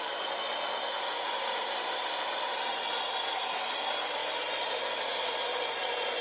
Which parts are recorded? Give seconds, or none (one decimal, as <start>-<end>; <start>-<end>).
0.0-6.2